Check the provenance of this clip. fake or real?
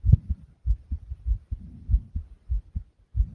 real